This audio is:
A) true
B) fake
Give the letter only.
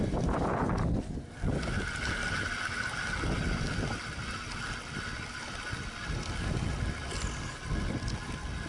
A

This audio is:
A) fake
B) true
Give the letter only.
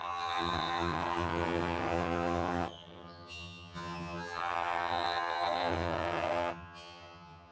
A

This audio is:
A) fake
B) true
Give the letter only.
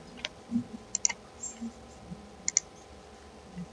B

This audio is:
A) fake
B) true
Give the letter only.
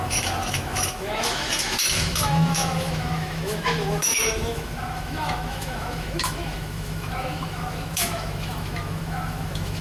A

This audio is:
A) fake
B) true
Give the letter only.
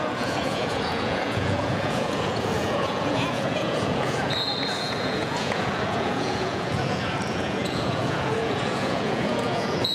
A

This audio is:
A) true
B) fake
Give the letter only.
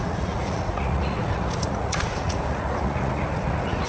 B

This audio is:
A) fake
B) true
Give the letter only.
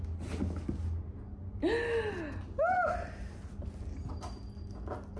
B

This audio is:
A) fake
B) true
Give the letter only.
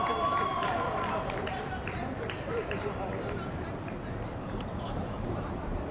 A